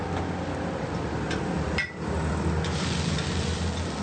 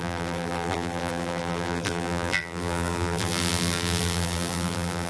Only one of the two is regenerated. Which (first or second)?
second